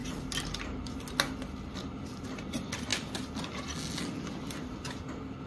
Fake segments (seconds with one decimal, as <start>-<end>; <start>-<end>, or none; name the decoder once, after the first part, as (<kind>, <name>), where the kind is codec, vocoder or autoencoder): none